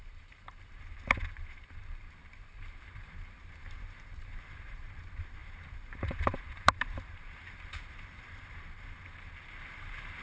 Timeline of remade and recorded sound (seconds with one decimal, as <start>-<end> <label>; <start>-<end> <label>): 0.0-10.2 remade